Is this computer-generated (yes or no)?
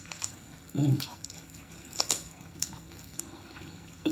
yes